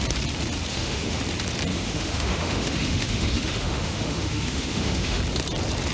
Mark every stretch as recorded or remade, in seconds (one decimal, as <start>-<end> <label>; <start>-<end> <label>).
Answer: 0.0-0.7 recorded; 0.7-1.2 remade; 1.2-1.7 recorded; 1.7-5.2 remade; 5.2-5.9 recorded